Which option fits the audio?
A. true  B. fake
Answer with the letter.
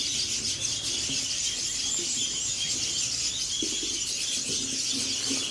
A